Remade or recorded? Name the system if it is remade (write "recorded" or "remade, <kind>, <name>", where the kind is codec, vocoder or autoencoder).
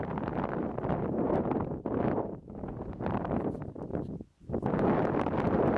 recorded